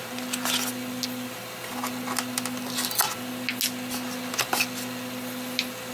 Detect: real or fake real